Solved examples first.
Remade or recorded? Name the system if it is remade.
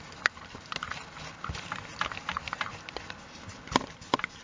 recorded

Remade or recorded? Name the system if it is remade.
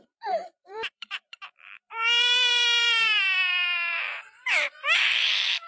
remade, vocoder, BigVGAN v2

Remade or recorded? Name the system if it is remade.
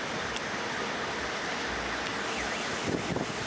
recorded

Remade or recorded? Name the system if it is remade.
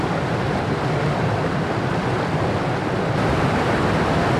recorded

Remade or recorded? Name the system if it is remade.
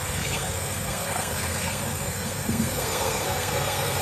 remade, codec, SNAC